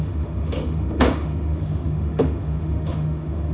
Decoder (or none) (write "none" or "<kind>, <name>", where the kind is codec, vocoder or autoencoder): autoencoder, DAC-VAE